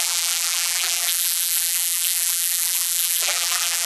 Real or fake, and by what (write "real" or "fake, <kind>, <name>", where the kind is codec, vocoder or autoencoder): fake, vocoder, BigVGAN v2